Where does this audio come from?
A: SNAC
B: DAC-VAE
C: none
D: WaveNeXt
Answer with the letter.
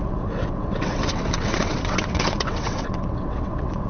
D